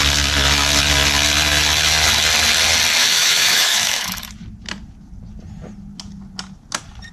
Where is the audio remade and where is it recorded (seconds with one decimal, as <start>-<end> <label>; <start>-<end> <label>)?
0.0-3.0 recorded; 3.0-4.2 remade; 4.2-7.1 recorded